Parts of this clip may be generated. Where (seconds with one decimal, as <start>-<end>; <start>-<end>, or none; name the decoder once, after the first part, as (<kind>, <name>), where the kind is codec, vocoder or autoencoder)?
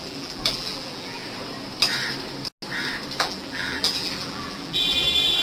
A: 0.0-1.2 (vocoder, BigVGAN v2); 3.2-5.4